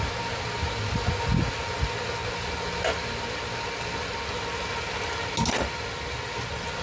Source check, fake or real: real